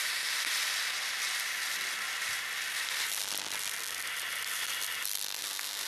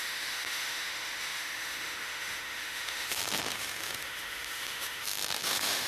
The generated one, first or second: second